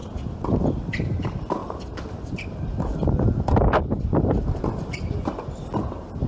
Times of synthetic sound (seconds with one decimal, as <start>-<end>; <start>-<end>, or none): 0.0-6.3